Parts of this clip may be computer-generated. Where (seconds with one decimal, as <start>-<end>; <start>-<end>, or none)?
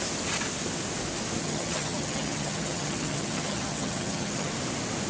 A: 1.4-4.5